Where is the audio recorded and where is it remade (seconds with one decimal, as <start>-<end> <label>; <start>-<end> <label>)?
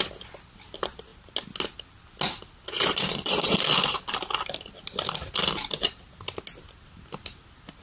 0.0-7.8 recorded